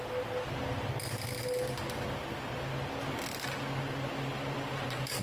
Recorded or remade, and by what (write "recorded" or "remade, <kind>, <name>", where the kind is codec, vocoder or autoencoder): recorded